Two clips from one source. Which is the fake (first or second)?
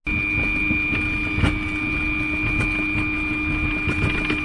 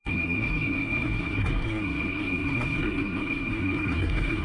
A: second